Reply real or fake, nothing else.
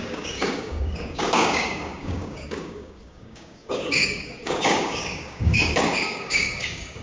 fake